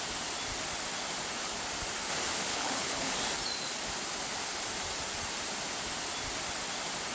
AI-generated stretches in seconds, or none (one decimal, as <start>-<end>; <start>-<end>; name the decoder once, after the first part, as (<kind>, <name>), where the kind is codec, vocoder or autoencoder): 2.5-3.1 (codec, HILCodec)